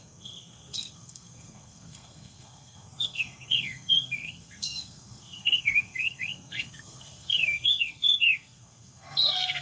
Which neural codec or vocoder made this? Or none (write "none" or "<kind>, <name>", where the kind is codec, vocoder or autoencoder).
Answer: codec, SNAC